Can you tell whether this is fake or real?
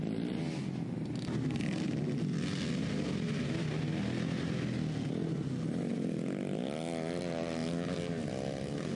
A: real